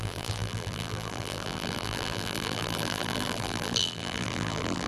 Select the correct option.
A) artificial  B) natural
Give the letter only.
A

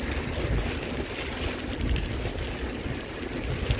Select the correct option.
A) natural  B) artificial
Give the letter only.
A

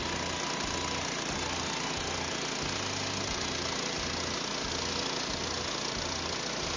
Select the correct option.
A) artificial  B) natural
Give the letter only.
B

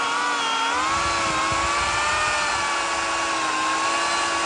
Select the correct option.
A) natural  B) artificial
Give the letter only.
A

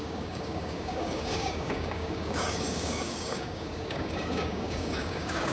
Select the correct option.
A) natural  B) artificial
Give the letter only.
B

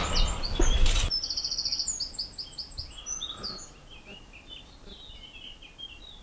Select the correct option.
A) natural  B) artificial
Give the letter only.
A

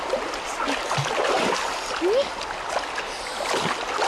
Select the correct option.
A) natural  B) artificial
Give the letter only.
A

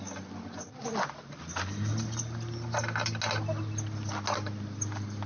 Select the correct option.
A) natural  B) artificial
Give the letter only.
A